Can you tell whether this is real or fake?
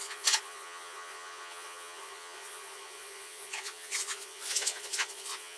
fake